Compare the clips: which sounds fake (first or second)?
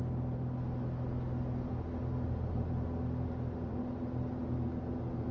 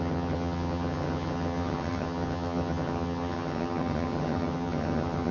second